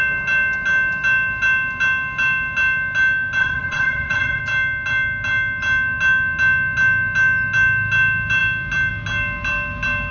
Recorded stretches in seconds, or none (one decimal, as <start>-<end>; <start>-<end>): 0.0-3.4; 4.4-10.1